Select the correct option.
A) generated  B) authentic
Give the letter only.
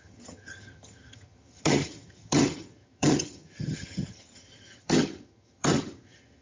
A